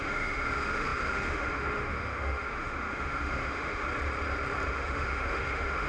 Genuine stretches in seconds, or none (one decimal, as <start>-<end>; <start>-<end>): 3.9-4.7